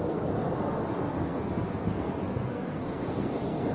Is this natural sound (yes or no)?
no